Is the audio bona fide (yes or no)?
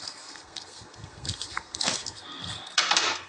no